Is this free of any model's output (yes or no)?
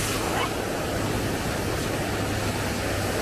yes